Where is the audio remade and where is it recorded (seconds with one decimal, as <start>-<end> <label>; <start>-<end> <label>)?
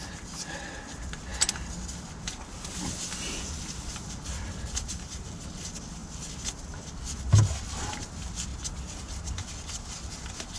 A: 0.0-10.6 recorded